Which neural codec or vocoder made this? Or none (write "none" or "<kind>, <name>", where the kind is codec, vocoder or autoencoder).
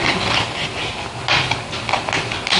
none